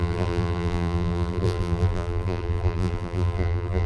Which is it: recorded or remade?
remade